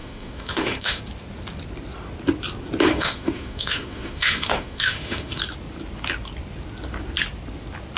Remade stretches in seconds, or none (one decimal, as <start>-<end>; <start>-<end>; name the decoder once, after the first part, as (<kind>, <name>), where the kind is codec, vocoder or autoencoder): 0.0-1.0 (autoencoder, DAC-VAE); 2.9-5.4